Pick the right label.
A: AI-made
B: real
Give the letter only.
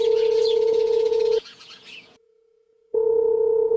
A